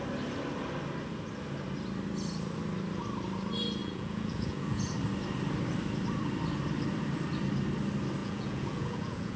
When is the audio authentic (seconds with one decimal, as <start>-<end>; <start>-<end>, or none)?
0.0-3.8; 4.9-8.2